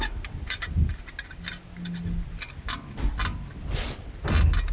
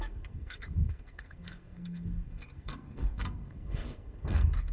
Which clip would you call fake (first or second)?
second